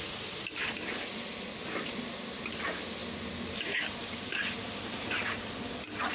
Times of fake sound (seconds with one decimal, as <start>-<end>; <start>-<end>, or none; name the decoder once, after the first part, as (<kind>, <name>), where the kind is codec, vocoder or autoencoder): none